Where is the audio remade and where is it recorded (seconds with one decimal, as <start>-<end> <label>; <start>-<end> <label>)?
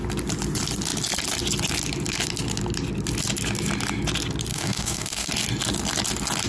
0.0-4.5 recorded; 4.5-5.3 remade; 5.3-6.5 recorded